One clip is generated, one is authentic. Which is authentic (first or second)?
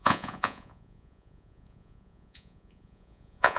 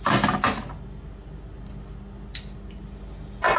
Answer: second